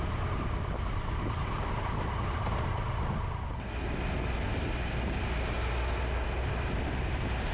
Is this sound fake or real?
real